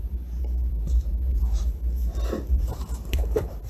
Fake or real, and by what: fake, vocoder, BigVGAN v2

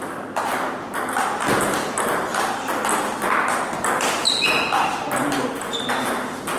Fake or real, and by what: real